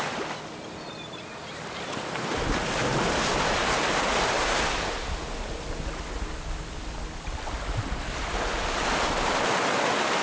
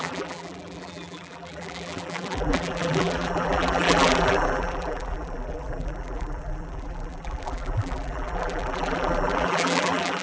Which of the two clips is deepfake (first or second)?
second